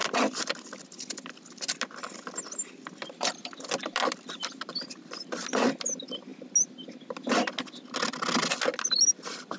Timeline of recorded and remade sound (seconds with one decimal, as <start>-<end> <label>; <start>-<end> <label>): 0.0-9.6 recorded